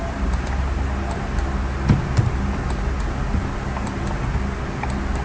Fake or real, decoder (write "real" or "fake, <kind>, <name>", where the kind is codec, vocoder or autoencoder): real